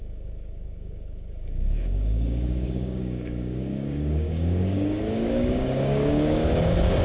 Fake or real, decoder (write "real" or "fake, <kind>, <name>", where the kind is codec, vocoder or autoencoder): fake, codec, DAC